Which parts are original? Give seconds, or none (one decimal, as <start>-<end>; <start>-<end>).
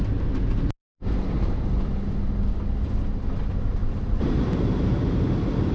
0.0-0.8; 1.6-3.8; 4.5-5.7